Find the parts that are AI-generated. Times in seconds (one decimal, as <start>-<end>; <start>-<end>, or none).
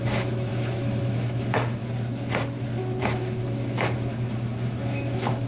0.0-1.8; 3.0-5.5